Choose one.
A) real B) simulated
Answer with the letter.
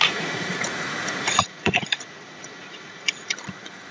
B